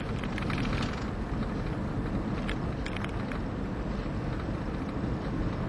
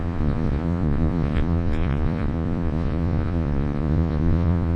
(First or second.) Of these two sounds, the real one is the first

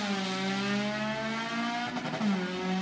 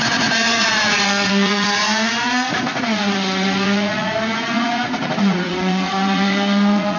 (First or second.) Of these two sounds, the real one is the first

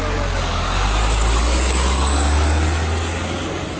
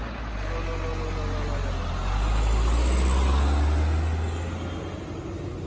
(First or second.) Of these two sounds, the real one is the second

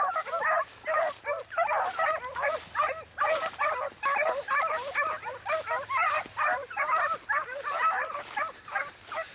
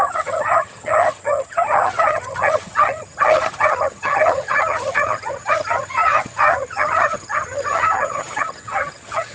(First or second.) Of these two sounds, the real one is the first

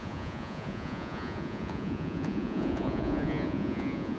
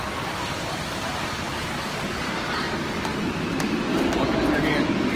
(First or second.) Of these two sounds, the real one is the second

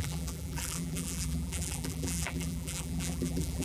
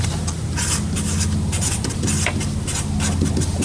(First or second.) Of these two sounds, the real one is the second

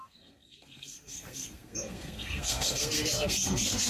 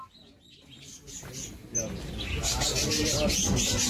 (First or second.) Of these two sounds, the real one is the second